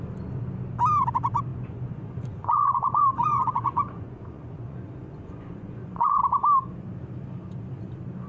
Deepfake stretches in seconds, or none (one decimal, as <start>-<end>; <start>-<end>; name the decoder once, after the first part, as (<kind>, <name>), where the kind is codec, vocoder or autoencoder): 1.5-6.2 (vocoder, Vocos)